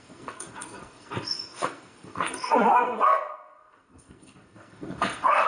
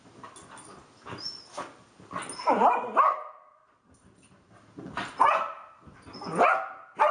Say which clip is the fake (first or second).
first